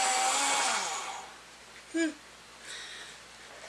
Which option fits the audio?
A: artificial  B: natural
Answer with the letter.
B